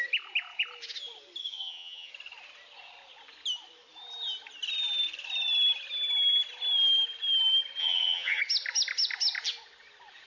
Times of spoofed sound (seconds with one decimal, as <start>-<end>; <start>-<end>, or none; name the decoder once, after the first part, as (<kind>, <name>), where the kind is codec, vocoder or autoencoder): 1.4-2.1 (vocoder, HiFi-GAN); 7.8-8.4